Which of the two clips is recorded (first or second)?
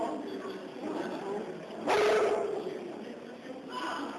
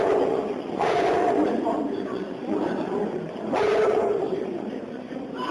first